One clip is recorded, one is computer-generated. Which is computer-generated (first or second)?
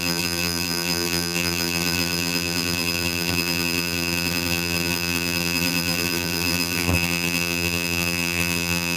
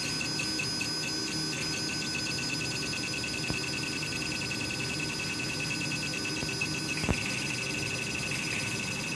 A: first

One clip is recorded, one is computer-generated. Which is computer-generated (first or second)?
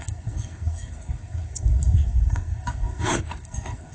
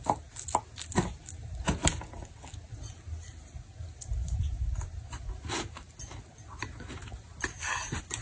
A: first